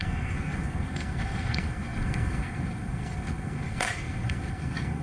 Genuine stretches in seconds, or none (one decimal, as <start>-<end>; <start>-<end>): none